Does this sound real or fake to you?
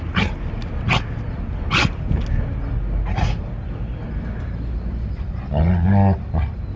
real